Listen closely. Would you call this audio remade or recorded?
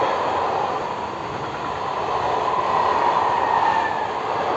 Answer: recorded